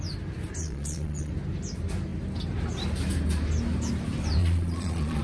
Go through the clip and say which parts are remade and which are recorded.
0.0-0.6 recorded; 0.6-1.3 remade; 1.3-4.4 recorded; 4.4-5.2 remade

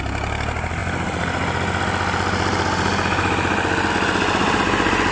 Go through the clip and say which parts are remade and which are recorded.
0.0-5.1 recorded

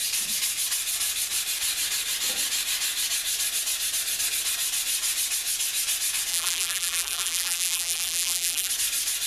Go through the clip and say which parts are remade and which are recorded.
0.0-6.3 recorded; 6.3-8.7 remade; 8.7-9.3 recorded